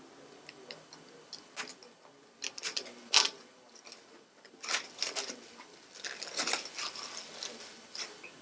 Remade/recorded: recorded